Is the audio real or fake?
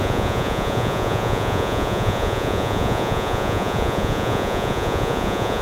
fake